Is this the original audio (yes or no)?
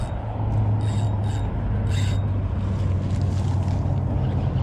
yes